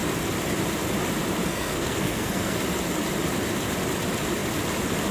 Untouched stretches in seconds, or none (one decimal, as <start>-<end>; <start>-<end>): 0.0-1.4; 2.6-5.1